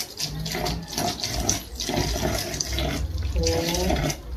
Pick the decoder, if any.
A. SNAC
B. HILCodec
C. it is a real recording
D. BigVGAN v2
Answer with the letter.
C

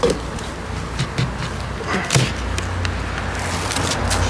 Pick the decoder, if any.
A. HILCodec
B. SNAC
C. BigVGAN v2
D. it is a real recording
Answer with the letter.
D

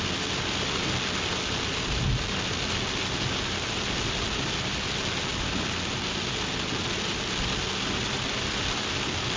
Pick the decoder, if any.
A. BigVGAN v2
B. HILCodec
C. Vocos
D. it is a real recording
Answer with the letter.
D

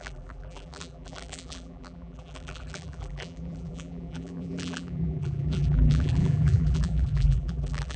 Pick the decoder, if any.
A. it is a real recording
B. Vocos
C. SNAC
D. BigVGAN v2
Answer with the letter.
D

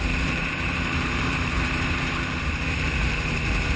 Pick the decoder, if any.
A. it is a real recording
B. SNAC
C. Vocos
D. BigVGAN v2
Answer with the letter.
D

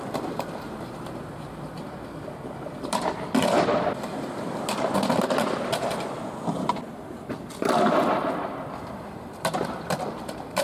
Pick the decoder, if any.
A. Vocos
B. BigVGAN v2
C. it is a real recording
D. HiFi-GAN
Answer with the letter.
B